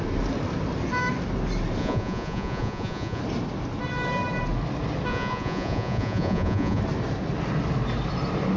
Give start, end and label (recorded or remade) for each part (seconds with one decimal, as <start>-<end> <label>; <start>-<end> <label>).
0.0-1.8 recorded; 1.8-3.2 remade; 3.2-5.1 recorded; 5.1-6.8 remade; 6.8-8.6 recorded